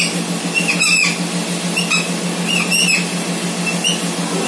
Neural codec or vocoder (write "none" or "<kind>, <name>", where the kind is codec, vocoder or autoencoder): none